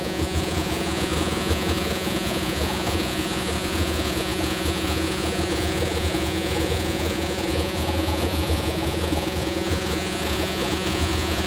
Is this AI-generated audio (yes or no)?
yes